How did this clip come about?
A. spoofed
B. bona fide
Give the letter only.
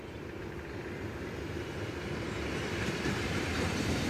A